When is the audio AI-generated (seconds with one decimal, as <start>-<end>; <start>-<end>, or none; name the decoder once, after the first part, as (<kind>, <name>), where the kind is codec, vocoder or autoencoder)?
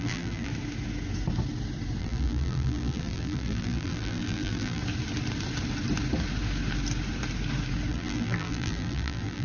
0.0-0.5 (vocoder, BigVGAN v2); 2.0-4.8; 7.9-9.4